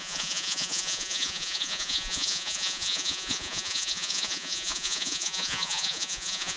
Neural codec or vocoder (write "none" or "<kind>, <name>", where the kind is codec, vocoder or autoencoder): vocoder, Vocos